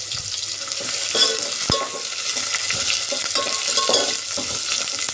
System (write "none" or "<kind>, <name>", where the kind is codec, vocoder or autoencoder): none